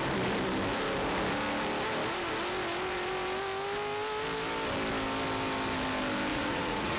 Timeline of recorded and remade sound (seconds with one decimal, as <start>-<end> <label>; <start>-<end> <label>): 0.0-6.3 recorded; 6.3-7.0 remade